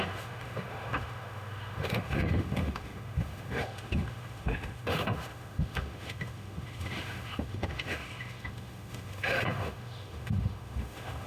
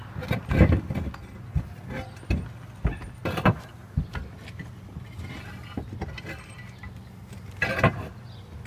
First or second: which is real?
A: second